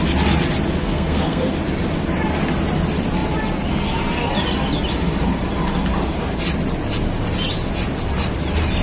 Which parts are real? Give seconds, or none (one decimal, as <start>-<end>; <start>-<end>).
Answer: 0.0-0.8; 1.5-8.8